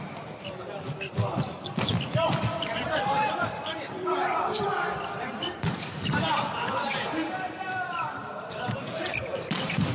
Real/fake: fake